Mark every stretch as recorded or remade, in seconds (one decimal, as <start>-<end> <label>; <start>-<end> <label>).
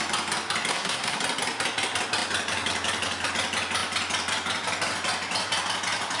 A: 0.0-0.7 recorded; 0.7-1.2 remade; 1.2-6.2 recorded